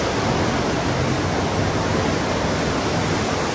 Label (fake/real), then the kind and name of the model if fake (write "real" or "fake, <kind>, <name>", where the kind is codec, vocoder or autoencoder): real